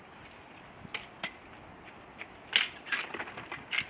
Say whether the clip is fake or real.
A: real